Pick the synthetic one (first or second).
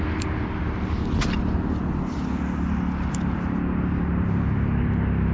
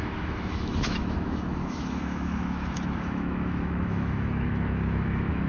second